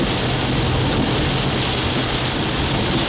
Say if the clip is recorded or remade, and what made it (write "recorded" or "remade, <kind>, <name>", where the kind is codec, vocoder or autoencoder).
recorded